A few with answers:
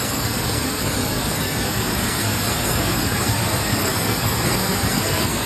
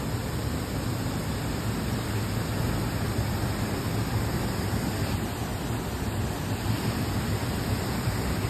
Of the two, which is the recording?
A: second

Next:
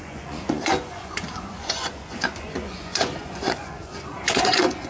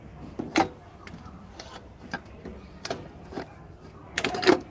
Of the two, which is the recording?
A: second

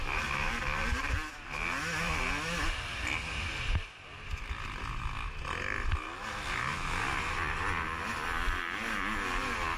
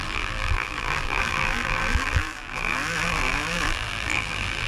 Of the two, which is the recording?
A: first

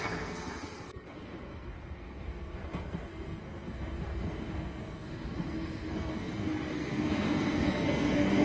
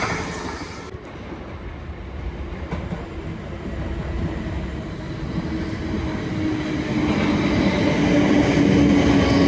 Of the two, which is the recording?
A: second